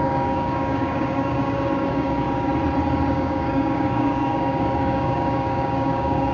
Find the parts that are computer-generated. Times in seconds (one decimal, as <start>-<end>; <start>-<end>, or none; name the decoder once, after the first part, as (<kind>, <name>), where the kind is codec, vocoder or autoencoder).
0.0-2.5 (codec, DAC); 3.1-6.3